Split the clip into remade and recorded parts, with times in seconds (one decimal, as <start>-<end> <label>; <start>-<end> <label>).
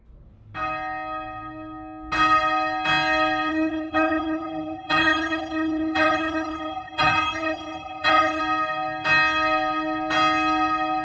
0.0-3.5 recorded; 3.5-8.4 remade; 8.4-11.0 recorded